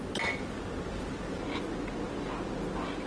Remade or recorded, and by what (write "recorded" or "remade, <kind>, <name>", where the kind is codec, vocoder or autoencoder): recorded